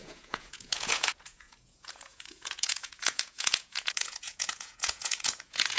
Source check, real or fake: fake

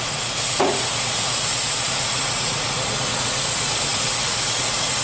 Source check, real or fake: fake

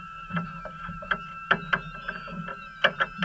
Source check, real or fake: real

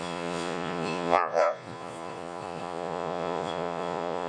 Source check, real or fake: fake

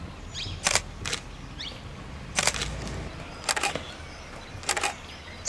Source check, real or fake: real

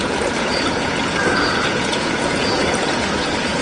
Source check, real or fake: fake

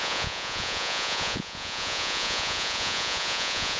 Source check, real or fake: fake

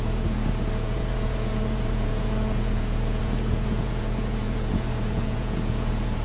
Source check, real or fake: fake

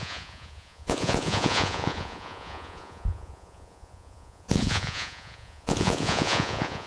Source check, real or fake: fake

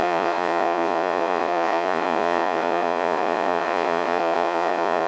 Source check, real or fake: fake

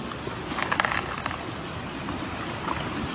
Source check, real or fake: real